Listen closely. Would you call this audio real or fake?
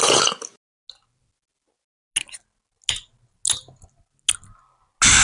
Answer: real